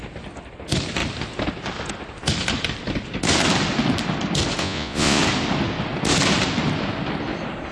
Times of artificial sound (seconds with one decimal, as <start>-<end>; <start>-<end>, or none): 4.6-5.2